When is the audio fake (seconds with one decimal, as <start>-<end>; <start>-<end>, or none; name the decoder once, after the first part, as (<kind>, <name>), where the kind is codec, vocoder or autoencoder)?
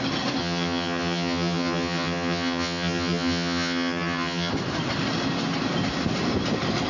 0.4-4.5 (vocoder, HiFi-GAN)